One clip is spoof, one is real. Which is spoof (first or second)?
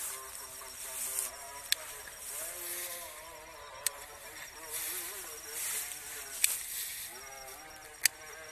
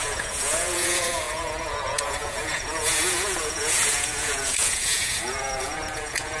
second